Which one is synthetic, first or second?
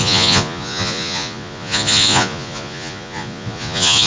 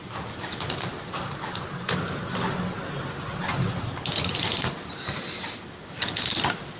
first